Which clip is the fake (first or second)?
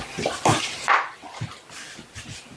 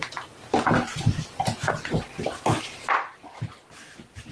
first